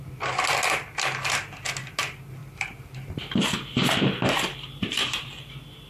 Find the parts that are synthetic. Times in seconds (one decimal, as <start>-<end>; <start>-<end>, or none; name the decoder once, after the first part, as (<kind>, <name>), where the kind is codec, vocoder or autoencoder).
2.4-5.5 (vocoder, BigVGAN v2)